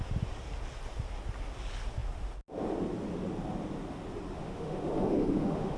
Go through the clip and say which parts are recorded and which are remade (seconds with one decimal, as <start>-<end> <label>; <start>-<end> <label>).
0.0-4.4 recorded; 4.4-5.8 remade